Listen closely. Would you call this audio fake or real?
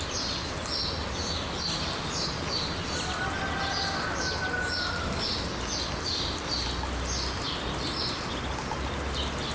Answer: real